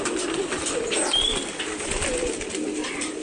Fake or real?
fake